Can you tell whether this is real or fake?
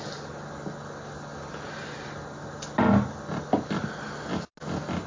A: real